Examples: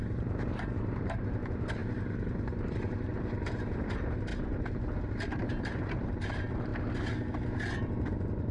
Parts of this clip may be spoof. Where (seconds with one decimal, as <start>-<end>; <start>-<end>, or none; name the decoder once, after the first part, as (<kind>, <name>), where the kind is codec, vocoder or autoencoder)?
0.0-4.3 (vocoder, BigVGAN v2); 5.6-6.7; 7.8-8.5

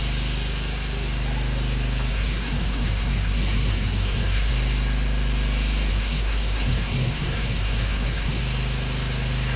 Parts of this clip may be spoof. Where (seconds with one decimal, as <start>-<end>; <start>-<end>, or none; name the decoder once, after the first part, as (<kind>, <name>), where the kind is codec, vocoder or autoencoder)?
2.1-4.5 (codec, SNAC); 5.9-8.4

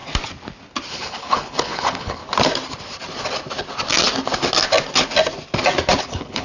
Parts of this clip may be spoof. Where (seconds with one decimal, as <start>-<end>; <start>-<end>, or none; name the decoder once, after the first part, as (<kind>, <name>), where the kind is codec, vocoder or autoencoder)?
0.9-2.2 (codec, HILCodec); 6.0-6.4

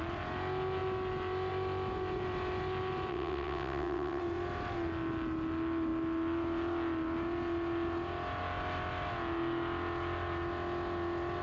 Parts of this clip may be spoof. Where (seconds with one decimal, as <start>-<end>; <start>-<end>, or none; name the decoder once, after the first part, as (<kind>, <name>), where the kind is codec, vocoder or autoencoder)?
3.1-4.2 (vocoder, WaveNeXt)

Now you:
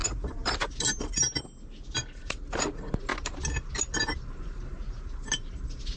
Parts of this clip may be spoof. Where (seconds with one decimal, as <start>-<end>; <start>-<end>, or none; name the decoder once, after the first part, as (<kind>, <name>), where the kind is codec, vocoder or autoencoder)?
none

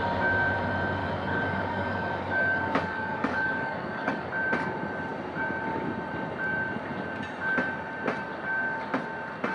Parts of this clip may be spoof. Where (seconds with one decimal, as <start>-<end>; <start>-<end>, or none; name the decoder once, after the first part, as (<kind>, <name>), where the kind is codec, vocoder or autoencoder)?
1.0-4.3 (codec, DAC)

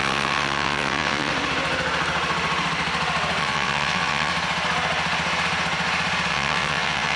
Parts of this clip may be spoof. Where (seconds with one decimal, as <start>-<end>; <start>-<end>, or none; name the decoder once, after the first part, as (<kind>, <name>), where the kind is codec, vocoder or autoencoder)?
0.0-1.3 (vocoder, WaveNeXt); 3.4-4.3; 6.3-7.2